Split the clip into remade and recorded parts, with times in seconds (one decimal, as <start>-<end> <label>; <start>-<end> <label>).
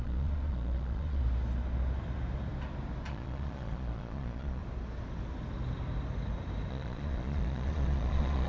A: 0.0-1.2 remade; 1.2-3.1 recorded; 3.1-4.6 remade; 4.6-6.7 recorded; 6.7-8.5 remade